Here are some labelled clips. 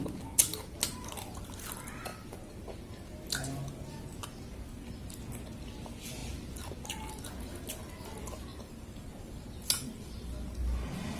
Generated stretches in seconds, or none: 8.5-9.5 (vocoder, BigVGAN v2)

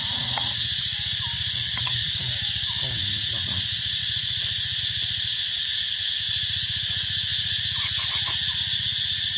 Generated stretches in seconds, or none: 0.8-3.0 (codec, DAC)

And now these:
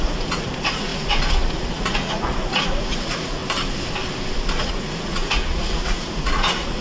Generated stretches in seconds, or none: 0.0-3.4 (vocoder, Vocos); 4.5-6.8

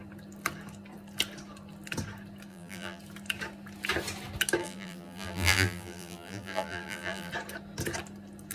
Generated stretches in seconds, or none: 2.5-3.0 (vocoder, BigVGAN v2); 4.6-7.3

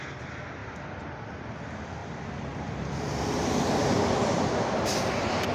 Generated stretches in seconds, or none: 2.0-5.5 (vocoder, BigVGAN v2)